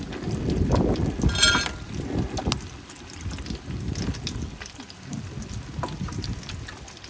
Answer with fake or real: real